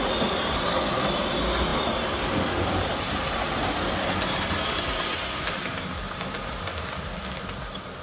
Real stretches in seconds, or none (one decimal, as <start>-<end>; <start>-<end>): 0.0-8.0